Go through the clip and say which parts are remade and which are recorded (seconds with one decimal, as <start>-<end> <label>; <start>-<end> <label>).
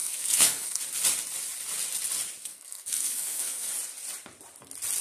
0.0-0.8 remade; 0.8-2.4 recorded; 2.4-3.7 remade; 3.7-5.0 recorded